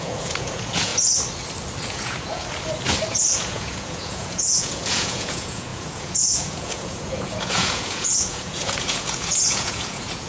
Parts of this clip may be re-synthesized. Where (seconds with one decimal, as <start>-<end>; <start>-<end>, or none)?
0.0-0.9; 1.9-2.4; 3.1-10.3